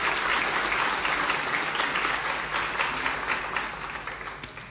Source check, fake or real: real